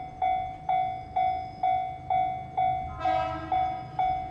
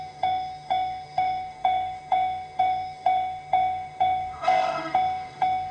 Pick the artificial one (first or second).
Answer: second